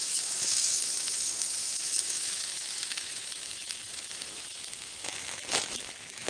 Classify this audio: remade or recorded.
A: remade